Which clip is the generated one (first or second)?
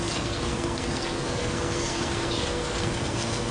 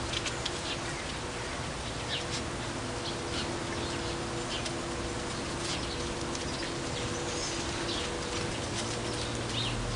first